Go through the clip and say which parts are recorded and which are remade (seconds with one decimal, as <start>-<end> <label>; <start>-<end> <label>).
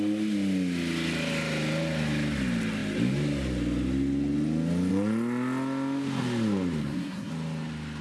0.0-6.8 recorded; 6.8-7.3 remade; 7.3-8.0 recorded